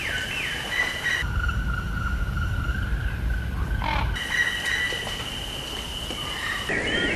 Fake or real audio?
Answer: real